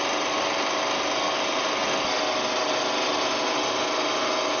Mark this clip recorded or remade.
recorded